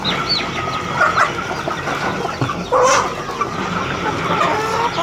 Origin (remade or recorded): recorded